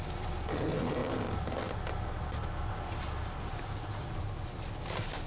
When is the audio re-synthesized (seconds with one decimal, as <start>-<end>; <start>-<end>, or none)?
none